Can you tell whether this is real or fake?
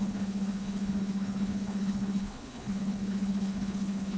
fake